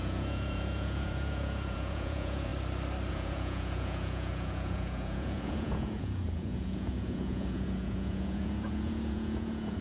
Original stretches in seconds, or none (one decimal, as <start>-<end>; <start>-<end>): 2.5-3.1